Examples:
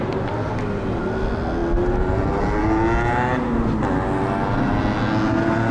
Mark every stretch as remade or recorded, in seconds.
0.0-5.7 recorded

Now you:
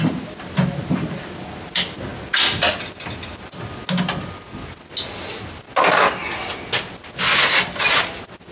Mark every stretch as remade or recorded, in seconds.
0.0-8.5 recorded

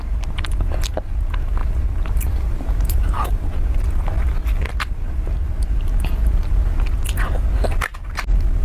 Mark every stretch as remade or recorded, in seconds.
0.0-1.6 recorded; 1.6-3.8 remade; 3.8-8.6 recorded